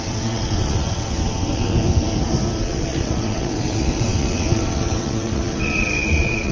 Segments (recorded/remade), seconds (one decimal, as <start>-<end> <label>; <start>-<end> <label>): 0.0-1.7 remade; 1.7-2.6 recorded; 2.6-6.5 remade